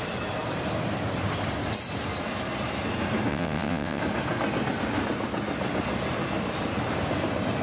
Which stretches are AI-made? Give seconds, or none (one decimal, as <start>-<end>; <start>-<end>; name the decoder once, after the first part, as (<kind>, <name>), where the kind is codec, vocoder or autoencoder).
3.3-4.0 (vocoder, WaveNeXt)